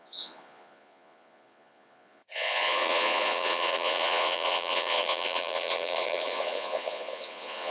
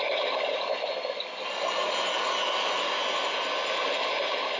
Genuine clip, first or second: second